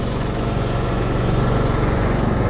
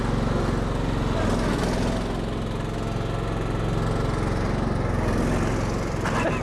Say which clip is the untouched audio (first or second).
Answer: second